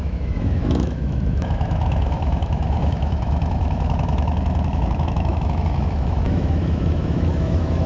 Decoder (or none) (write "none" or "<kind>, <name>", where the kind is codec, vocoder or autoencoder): autoencoder, DAC-VAE